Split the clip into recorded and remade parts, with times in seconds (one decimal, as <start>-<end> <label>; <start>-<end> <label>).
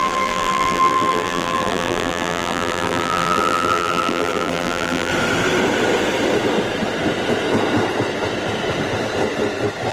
0.0-5.1 remade; 5.1-9.9 recorded